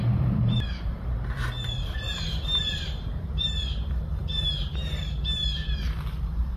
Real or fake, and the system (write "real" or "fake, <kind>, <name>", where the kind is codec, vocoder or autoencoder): fake, vocoder, BigVGAN v2